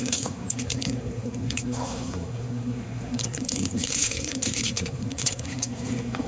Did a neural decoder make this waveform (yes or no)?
yes